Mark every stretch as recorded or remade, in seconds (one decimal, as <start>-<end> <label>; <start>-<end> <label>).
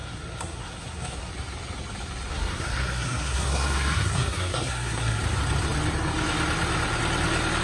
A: 0.0-1.3 remade; 1.3-2.3 recorded; 2.3-5.2 remade; 5.2-7.6 recorded